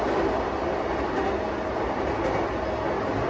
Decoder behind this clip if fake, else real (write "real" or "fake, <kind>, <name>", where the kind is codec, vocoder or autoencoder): real